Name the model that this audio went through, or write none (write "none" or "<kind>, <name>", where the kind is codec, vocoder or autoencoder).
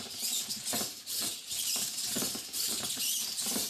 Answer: vocoder, BigVGAN v2